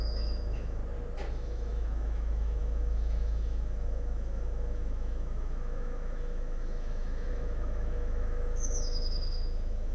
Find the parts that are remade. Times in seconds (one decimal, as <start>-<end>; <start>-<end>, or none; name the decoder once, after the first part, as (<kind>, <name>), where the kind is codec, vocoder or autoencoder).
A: 0.0-0.8 (autoencoder, DAC-VAE); 1.3-9.9